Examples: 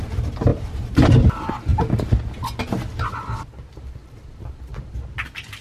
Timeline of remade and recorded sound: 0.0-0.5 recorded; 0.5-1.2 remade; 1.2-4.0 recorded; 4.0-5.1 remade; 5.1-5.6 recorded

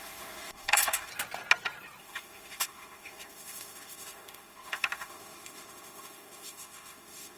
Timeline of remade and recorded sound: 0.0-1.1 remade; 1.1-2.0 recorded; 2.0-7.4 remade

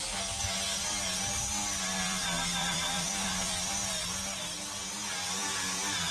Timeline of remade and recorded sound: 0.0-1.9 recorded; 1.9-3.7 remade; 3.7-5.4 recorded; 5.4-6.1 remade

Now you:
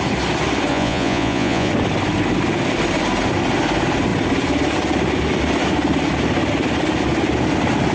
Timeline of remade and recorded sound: 0.0-0.7 recorded; 0.7-1.7 remade; 1.7-7.9 recorded